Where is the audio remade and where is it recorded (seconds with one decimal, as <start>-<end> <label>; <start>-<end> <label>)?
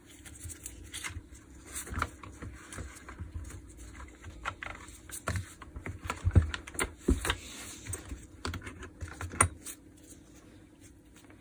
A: 0.0-11.4 recorded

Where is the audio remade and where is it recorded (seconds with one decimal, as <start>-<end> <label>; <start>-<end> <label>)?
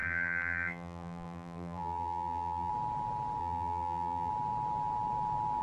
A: 0.0-2.7 remade; 2.7-3.4 recorded; 3.4-4.3 remade; 4.3-5.6 recorded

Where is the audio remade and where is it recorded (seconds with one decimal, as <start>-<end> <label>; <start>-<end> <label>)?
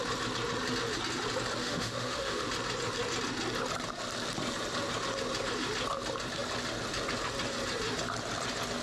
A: 0.0-1.6 recorded; 1.6-2.5 remade; 2.5-8.8 recorded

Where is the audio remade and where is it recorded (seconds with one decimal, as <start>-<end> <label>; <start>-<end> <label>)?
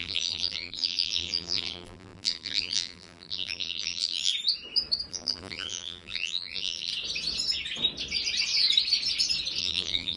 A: 0.0-4.3 remade; 4.3-5.1 recorded; 5.1-6.9 remade; 6.9-9.6 recorded; 9.6-10.2 remade